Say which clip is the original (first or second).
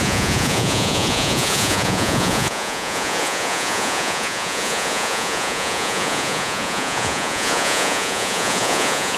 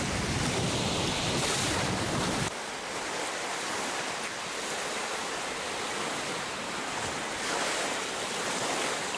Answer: second